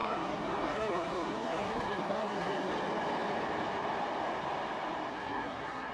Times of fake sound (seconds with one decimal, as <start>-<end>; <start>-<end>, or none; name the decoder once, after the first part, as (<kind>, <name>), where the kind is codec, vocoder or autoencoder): 0.0-2.7 (codec, SNAC); 5.1-5.9